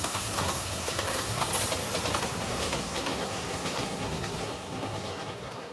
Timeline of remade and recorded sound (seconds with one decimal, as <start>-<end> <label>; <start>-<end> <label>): 0.0-1.5 remade; 1.5-2.2 recorded; 2.2-5.7 remade